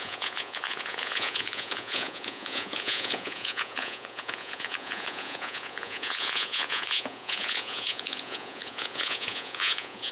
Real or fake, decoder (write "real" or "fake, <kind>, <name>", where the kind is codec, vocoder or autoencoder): fake, vocoder, Vocos